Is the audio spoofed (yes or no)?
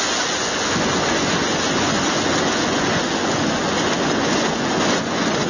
yes